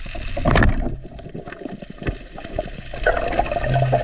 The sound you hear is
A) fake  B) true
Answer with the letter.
B